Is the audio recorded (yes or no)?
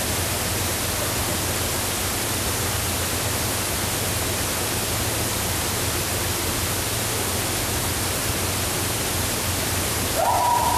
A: yes